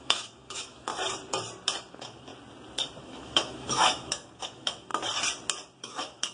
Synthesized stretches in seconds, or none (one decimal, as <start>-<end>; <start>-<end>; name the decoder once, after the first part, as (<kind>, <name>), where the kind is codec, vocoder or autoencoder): 0.0-0.9 (autoencoder, DAC-VAE); 1.9-2.3; 3.0-4.9; 5.8-6.3